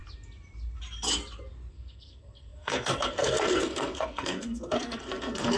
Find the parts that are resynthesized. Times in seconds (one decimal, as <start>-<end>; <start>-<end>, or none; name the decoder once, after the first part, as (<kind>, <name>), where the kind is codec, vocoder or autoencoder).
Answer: 1.7-5.6 (codec, SNAC)